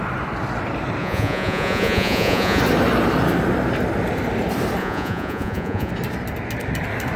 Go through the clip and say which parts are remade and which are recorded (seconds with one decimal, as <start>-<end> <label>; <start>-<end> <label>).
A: 0.0-1.0 recorded; 1.0-2.6 remade; 2.6-4.8 recorded; 4.8-5.9 remade; 5.9-7.2 recorded